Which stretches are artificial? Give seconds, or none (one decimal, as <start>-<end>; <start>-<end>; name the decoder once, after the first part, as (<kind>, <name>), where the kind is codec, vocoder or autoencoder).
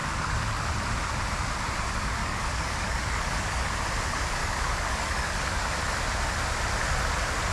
0.0-0.7 (codec, DAC); 2.2-3.7; 4.4-5.6